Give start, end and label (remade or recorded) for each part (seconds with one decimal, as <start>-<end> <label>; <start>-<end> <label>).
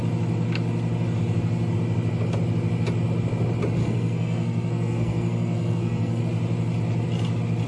0.0-3.8 recorded; 3.8-6.2 remade; 6.2-7.7 recorded